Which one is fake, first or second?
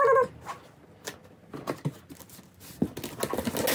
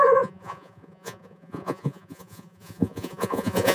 second